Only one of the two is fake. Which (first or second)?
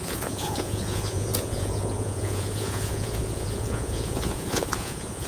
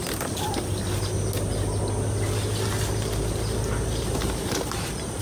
first